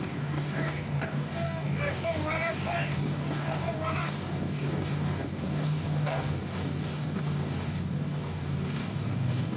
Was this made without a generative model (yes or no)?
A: no